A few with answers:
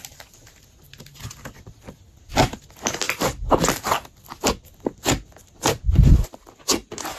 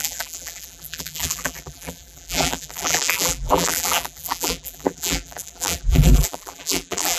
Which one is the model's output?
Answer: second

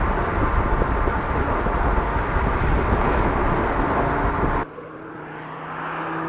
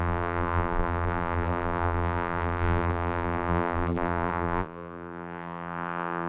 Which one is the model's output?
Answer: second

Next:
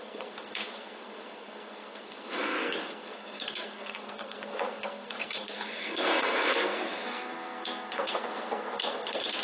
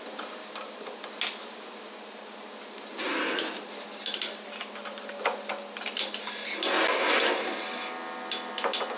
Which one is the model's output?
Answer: first